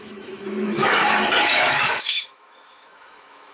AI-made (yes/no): yes